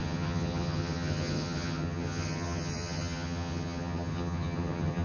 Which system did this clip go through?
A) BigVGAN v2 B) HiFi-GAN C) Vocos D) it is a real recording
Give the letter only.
B